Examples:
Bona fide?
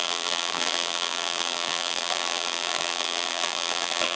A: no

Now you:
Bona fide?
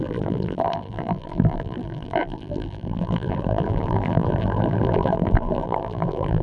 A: no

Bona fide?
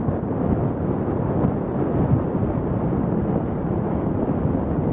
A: yes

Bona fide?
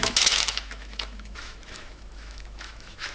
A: no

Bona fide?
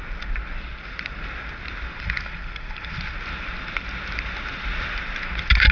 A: yes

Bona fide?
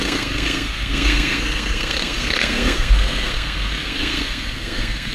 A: no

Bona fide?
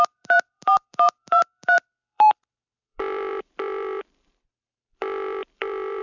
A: no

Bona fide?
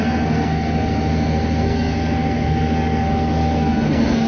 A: no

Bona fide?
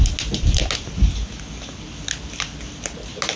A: yes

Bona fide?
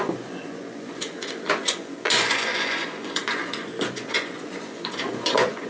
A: no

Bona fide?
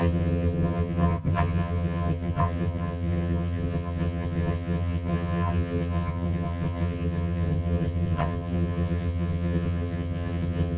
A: no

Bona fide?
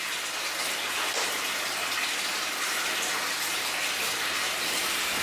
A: no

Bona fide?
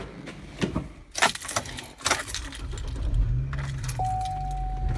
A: yes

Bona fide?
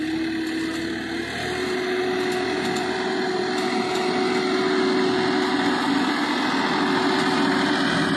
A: yes